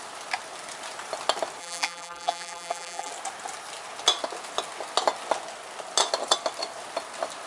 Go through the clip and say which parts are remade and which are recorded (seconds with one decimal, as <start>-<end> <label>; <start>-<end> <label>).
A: 0.0-1.6 recorded; 1.6-3.1 remade; 3.1-7.5 recorded